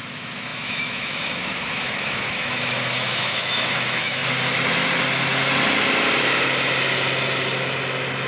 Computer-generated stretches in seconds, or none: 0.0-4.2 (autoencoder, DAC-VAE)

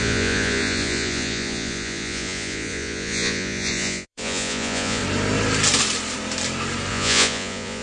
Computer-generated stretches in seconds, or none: 0.0-5.0 (vocoder, Vocos); 6.9-7.8

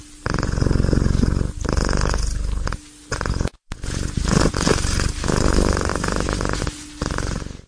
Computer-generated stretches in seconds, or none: none

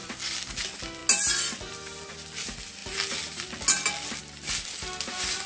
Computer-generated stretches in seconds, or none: 0.0-0.5 (vocoder, BigVGAN v2)

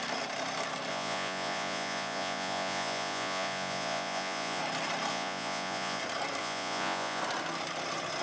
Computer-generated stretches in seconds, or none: 0.9-4.6 (vocoder, Vocos); 5.1-6.0; 6.4-7.2

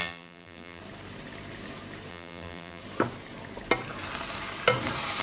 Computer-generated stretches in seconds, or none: 0.0-0.8 (vocoder, BigVGAN v2); 2.1-2.8

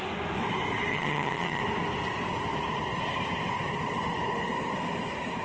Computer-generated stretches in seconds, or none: 0.9-1.6 (vocoder, HiFi-GAN)

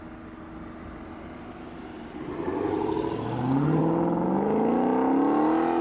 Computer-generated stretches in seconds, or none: none